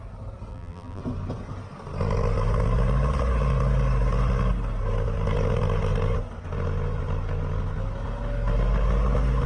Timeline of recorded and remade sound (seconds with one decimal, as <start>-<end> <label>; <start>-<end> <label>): 0.0-0.5 recorded; 0.5-1.0 remade; 1.0-9.5 recorded